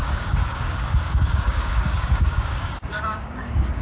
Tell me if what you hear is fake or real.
fake